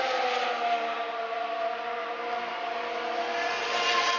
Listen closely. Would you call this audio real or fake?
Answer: real